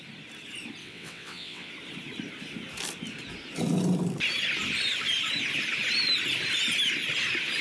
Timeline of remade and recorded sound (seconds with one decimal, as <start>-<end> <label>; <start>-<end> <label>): 0.0-0.8 recorded; 0.8-1.7 remade; 1.7-7.6 recorded